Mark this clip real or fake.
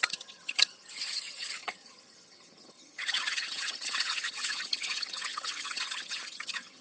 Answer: fake